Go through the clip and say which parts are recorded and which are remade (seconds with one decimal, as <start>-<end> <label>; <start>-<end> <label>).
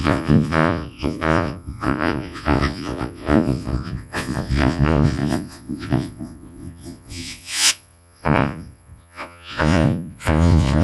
0.0-10.8 remade